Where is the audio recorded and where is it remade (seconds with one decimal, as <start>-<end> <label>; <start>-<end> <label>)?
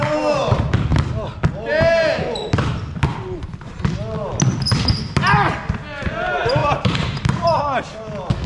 0.0-2.7 recorded; 2.7-3.8 remade; 3.8-6.6 recorded; 6.6-7.6 remade; 7.6-8.5 recorded